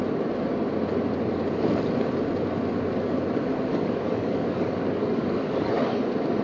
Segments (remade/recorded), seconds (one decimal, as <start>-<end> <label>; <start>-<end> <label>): 0.0-3.7 recorded; 3.7-5.8 remade; 5.8-6.4 recorded